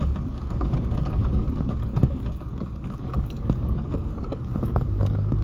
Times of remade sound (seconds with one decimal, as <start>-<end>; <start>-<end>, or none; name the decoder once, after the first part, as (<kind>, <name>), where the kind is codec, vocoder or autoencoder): 0.0-5.4 (codec, DAC)